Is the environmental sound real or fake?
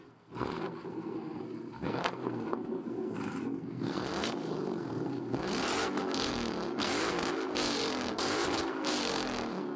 fake